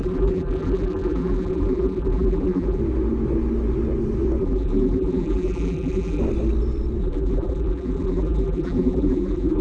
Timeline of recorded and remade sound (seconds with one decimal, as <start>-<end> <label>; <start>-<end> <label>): 0.0-2.8 remade; 2.8-4.4 recorded; 4.4-6.2 remade; 6.2-7.0 recorded; 7.0-9.6 remade

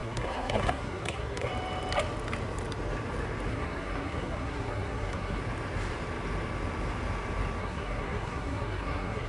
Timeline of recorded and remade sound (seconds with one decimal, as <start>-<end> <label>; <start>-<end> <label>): 0.0-1.5 remade; 1.5-3.5 recorded; 3.5-5.4 remade; 5.4-7.6 recorded; 7.6-9.3 remade

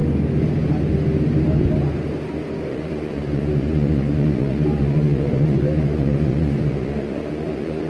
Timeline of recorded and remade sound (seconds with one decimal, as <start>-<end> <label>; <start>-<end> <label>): 0.0-2.7 recorded; 2.7-7.9 remade

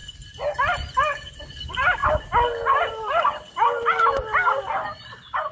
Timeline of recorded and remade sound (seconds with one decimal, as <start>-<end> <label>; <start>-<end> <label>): 0.0-5.5 recorded

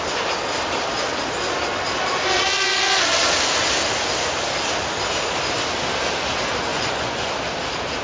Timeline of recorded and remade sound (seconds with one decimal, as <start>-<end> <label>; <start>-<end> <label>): 0.0-6.7 recorded; 6.7-7.3 remade; 7.3-8.0 recorded

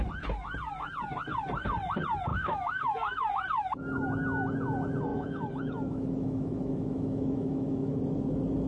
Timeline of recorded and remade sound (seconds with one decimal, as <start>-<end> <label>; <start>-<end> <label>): 0.0-2.3 recorded; 2.3-3.3 remade; 3.3-5.1 recorded; 5.1-8.0 remade; 8.0-8.7 recorded